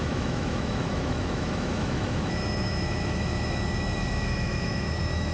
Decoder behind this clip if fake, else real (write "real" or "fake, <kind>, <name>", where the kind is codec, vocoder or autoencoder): fake, autoencoder, DAC-VAE